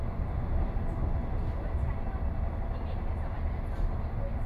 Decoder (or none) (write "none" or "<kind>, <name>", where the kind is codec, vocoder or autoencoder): none